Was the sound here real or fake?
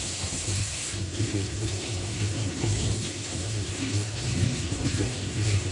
fake